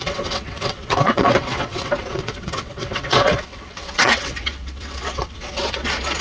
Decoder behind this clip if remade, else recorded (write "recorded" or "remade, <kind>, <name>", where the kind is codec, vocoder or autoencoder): remade, vocoder, WaveNeXt